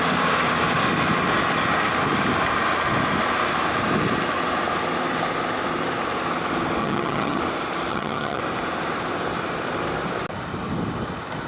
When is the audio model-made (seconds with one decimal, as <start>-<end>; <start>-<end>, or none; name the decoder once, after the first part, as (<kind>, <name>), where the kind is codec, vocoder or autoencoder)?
6.8-7.4 (vocoder, HiFi-GAN); 7.9-8.4